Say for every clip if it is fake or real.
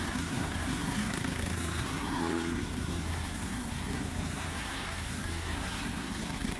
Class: fake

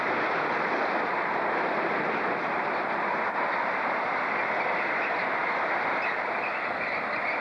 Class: real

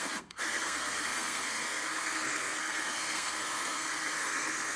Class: fake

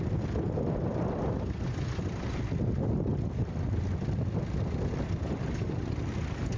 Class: real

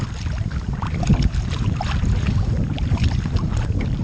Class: real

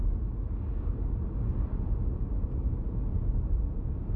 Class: real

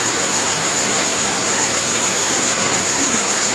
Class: fake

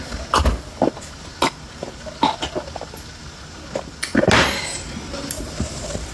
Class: real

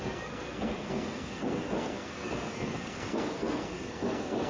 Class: fake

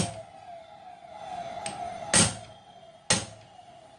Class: real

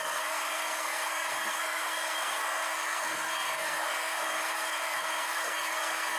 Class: fake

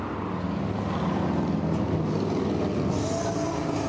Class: real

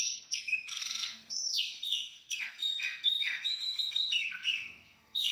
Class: fake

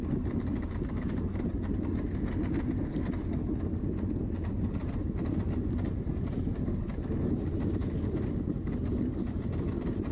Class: real